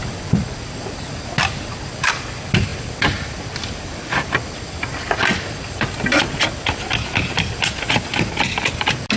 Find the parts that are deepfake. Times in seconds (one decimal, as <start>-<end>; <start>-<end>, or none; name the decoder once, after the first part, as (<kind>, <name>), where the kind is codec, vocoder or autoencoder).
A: none